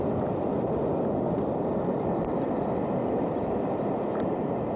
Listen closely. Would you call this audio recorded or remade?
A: remade